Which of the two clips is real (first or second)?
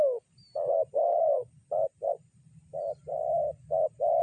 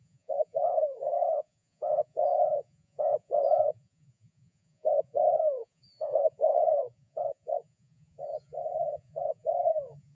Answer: first